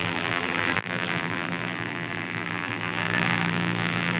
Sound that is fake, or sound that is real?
fake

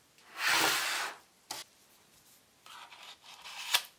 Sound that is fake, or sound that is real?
real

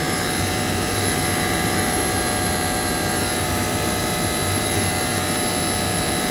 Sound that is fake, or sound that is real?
fake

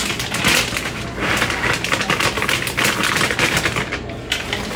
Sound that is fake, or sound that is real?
real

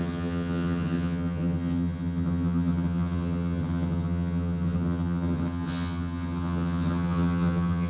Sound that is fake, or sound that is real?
fake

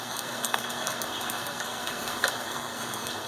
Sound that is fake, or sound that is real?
fake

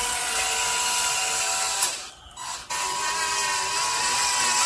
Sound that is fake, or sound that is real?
real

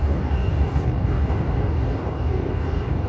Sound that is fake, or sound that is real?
fake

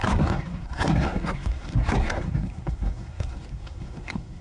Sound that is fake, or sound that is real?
fake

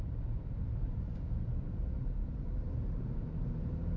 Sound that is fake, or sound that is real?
fake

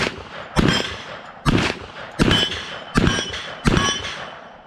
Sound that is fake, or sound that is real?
fake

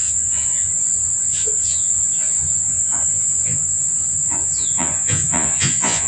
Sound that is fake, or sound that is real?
fake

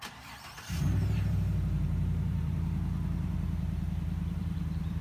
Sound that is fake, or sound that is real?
fake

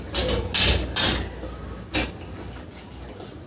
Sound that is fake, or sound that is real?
real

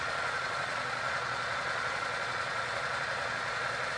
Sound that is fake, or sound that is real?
fake